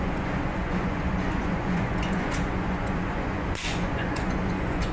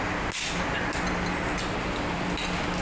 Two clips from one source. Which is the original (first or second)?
second